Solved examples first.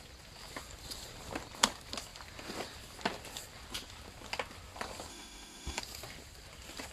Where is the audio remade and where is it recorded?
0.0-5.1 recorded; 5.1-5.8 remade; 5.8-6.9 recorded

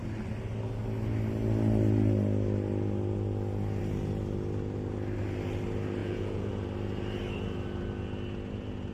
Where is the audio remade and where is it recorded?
0.0-6.0 recorded; 6.0-6.5 remade; 6.5-8.9 recorded

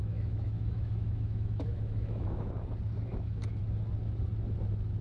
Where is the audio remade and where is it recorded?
0.0-2.5 remade; 2.5-3.1 recorded; 3.1-3.6 remade; 3.6-5.0 recorded

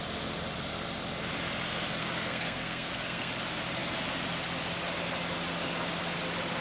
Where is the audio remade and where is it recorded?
0.0-2.0 recorded; 2.0-3.3 remade; 3.3-6.6 recorded

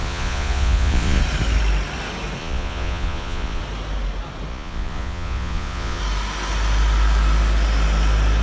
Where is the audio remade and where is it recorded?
0.0-1.2 remade; 1.2-2.4 recorded; 2.4-3.6 remade; 3.6-4.5 recorded; 4.5-6.0 remade; 6.0-8.4 recorded